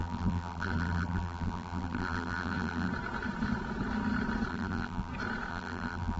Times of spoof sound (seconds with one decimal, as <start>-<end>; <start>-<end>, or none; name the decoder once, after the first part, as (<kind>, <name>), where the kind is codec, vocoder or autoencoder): 0.0-2.9 (vocoder, BigVGAN v2); 4.5-5.1; 5.5-6.2